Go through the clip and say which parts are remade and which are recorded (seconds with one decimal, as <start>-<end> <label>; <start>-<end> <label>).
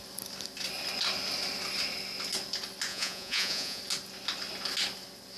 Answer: 0.0-2.9 recorded; 2.9-3.8 remade; 3.8-5.4 recorded